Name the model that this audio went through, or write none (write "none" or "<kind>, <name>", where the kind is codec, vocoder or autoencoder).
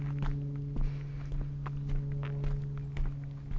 none